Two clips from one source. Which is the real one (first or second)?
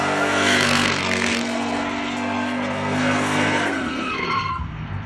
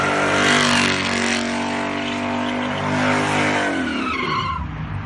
second